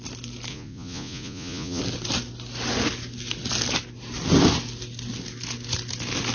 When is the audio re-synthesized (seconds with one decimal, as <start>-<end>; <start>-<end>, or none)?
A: 0.5-1.8